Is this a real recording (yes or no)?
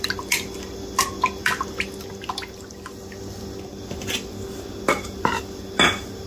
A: yes